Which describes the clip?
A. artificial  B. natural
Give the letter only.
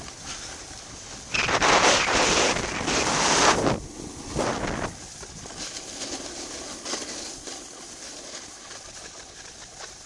B